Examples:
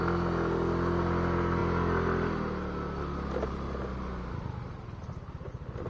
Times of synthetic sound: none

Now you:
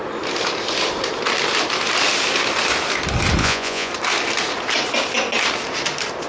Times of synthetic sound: 3.4-3.9 (vocoder, Vocos)